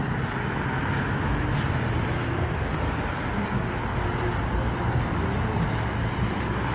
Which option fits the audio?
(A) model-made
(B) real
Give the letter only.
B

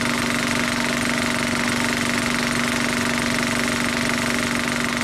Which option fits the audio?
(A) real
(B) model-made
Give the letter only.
A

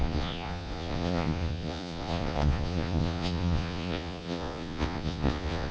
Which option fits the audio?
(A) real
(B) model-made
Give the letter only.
B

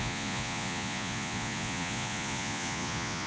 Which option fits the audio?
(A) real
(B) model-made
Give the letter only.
B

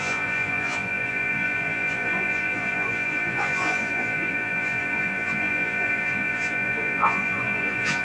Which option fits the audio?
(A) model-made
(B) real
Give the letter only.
A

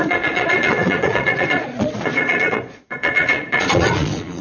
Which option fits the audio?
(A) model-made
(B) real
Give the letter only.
A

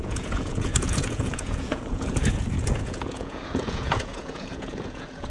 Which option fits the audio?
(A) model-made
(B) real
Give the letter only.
A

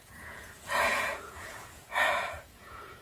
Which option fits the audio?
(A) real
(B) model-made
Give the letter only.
B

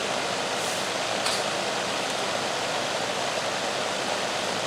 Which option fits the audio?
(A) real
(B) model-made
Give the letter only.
A